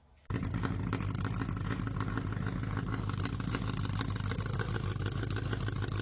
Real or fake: real